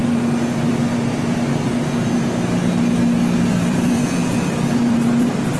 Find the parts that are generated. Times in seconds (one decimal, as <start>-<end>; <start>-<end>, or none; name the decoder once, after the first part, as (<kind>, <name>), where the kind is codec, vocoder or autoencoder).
3.4-4.0 (vocoder, BigVGAN v2); 4.8-5.6